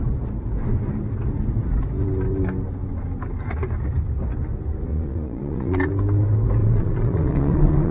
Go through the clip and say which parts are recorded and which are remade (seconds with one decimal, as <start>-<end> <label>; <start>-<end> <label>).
0.0-4.9 recorded; 4.9-5.9 remade; 5.9-6.6 recorded; 6.6-7.9 remade